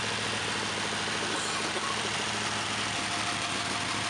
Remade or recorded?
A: recorded